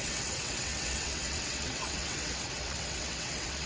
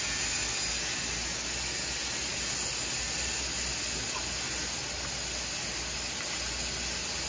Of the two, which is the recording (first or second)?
second